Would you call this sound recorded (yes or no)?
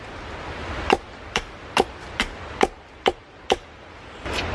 yes